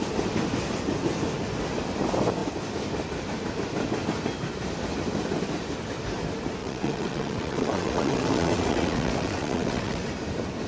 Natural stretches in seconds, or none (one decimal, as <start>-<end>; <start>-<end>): 0.0-6.6; 10.1-10.7